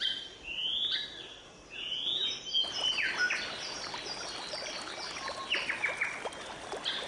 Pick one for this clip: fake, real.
real